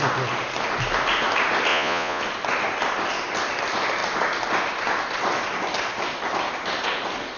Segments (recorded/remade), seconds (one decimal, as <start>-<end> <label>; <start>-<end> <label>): 0.0-1.7 recorded; 1.7-2.2 remade; 2.2-7.4 recorded